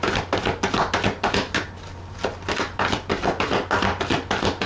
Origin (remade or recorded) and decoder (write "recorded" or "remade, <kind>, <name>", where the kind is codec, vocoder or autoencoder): recorded